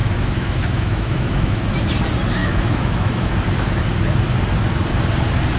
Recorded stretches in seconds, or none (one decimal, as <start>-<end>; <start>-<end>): 1.7-2.4; 3.3-5.6